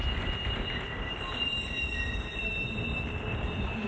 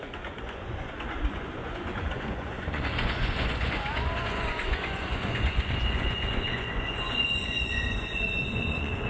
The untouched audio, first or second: first